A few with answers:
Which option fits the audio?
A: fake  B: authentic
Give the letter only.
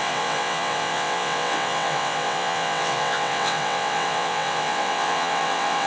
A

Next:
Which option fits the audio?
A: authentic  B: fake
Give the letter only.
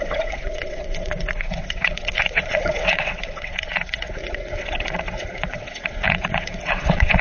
B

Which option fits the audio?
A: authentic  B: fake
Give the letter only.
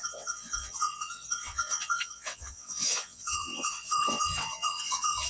B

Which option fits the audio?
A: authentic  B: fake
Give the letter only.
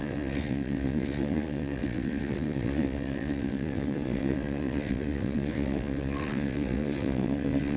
B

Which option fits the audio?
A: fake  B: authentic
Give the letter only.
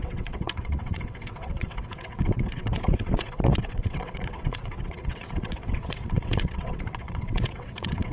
A